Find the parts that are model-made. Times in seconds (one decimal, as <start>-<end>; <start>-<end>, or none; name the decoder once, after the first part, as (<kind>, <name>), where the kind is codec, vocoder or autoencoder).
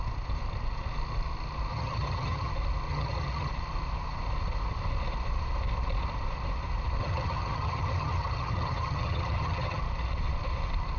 1.7-2.5 (vocoder, HiFi-GAN); 2.9-3.5; 7.0-9.8